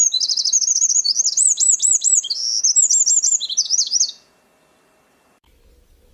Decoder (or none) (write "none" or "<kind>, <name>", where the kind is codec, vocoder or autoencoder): none